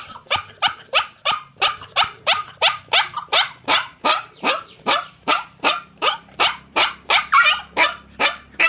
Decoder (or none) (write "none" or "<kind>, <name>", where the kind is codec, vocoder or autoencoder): vocoder, BigVGAN v2